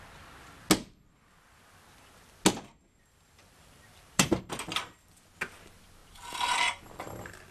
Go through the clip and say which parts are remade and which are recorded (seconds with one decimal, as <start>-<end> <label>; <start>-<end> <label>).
0.0-3.4 recorded; 3.4-4.4 remade; 4.4-7.5 recorded